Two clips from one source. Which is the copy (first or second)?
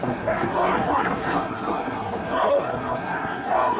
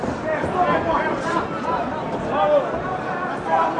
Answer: first